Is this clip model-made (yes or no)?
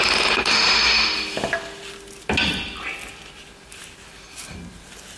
no